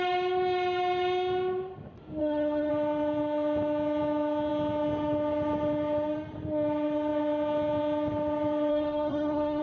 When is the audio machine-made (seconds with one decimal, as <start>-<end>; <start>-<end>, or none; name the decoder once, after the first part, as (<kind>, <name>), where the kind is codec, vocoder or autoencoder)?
2.2-2.7 (codec, SNAC); 8.7-9.6